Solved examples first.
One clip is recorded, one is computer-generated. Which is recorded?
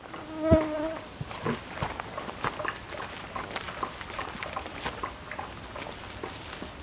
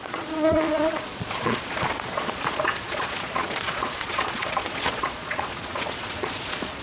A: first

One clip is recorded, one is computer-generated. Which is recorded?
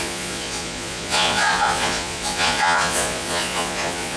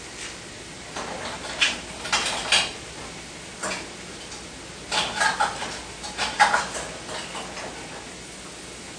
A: second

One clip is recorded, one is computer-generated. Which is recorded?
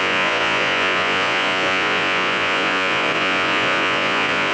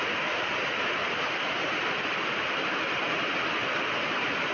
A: second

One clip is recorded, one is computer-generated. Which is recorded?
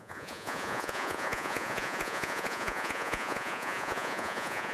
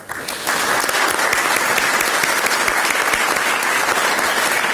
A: second